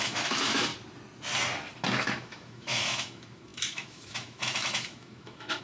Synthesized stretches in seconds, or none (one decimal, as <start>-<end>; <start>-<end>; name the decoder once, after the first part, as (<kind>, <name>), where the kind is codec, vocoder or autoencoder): 0.0-0.7 (autoencoder, DAC-VAE); 1.9-5.6

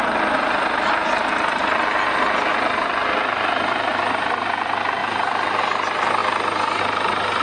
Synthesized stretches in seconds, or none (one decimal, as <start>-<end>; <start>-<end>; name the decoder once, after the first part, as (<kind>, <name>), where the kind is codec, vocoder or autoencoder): none

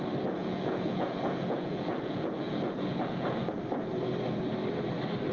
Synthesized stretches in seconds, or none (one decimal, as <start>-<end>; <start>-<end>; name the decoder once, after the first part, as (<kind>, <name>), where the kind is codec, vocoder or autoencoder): 0.4-3.6 (vocoder, Vocos)

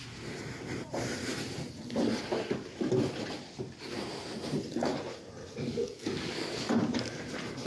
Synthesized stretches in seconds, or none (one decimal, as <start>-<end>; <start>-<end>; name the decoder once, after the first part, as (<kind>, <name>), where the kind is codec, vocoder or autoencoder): 5.4-7.2 (codec, DAC)

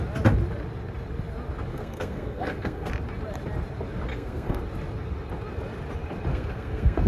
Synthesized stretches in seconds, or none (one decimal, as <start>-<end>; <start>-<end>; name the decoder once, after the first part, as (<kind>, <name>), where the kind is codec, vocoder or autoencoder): 1.7-2.9 (codec, SNAC); 4.1-4.6; 6.3-7.1

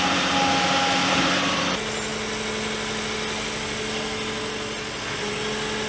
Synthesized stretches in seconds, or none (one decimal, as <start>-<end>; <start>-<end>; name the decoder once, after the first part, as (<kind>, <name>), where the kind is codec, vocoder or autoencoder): 1.0-1.6 (vocoder, BigVGAN v2)